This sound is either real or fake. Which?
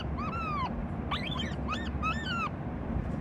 real